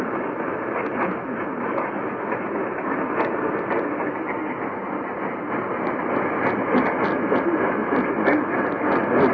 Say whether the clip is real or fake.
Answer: real